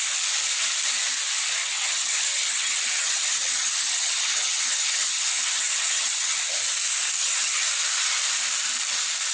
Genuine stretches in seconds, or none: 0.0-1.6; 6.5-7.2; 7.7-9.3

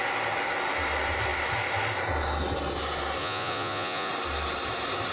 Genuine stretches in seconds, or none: 0.0-3.2; 4.1-5.1

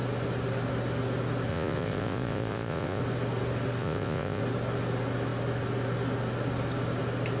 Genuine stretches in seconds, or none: 0.0-1.5; 3.0-3.8; 4.4-7.4

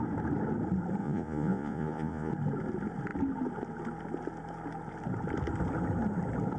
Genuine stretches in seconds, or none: 0.0-1.0; 2.3-6.6

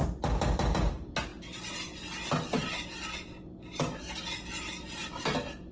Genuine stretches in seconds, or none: 0.0-5.7

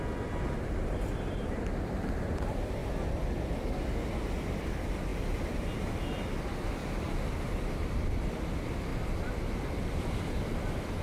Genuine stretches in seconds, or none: 2.8-4.4